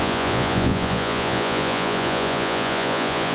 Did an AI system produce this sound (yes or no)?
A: yes